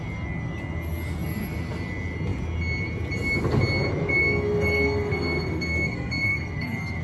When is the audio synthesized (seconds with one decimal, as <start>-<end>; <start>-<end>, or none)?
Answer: 4.2-7.0